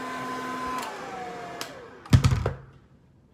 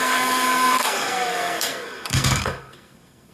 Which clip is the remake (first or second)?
second